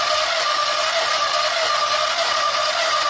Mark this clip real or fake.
real